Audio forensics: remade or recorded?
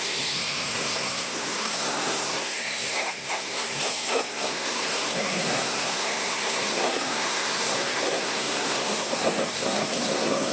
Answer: remade